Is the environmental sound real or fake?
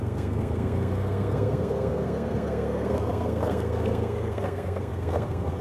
fake